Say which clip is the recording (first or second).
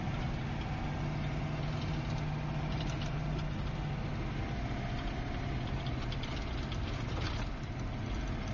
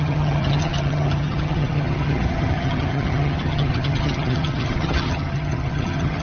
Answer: first